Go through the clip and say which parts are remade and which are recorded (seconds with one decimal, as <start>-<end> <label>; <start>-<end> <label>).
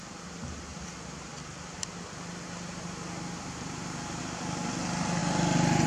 0.0-5.9 recorded